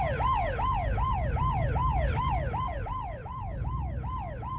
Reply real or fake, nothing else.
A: fake